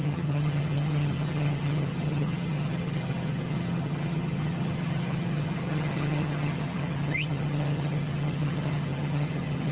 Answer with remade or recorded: remade